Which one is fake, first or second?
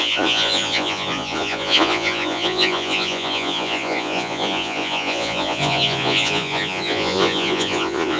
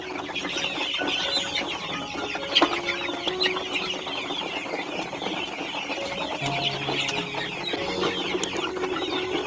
first